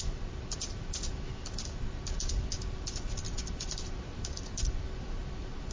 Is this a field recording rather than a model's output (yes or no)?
yes